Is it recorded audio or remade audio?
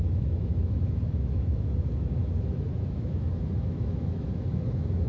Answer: remade